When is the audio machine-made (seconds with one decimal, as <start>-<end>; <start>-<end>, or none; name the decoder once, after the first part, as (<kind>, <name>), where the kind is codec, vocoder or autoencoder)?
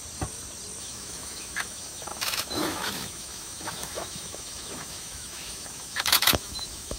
0.8-7.0 (autoencoder, DAC-VAE)